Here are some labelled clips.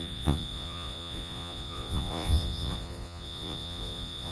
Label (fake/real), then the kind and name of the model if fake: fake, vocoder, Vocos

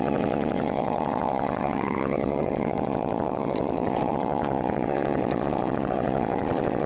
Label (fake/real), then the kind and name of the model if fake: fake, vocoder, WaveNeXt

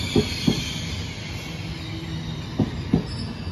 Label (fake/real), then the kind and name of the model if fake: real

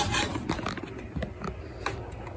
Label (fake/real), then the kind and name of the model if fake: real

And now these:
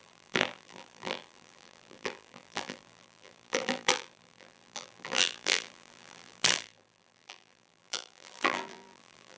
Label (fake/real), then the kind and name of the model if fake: fake, vocoder, BigVGAN v2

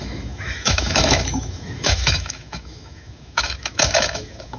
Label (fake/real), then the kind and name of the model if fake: fake, autoencoder, DAC-VAE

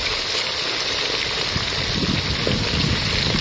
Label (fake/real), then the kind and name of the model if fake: real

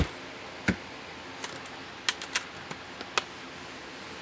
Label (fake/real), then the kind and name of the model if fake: real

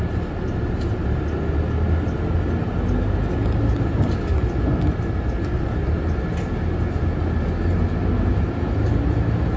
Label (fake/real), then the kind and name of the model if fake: real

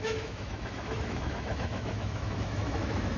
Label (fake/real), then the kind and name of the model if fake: fake, autoencoder, DAC-VAE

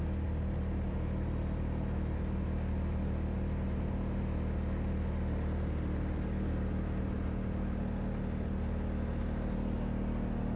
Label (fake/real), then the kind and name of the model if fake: real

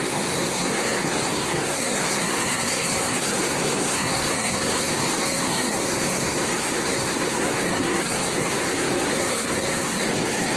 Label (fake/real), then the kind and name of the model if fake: fake, codec, SNAC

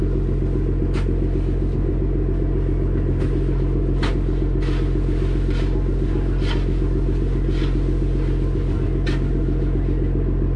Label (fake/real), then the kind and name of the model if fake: real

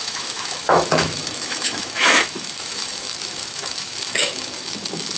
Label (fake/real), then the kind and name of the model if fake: fake, autoencoder, DAC-VAE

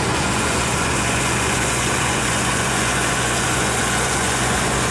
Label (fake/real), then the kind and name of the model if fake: fake, vocoder, Vocos